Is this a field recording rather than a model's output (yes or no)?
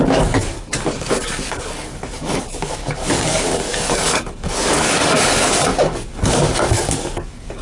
no